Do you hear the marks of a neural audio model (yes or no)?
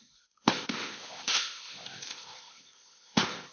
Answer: yes